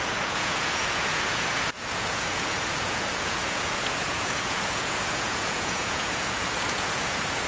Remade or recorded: remade